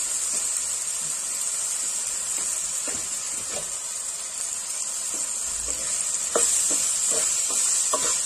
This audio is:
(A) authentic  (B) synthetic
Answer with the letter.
A